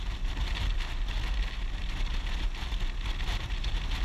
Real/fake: real